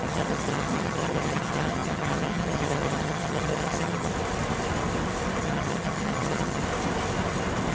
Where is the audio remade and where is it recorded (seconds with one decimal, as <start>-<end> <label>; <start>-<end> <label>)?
0.0-4.1 remade; 4.1-5.4 recorded; 5.4-6.6 remade; 6.6-7.7 recorded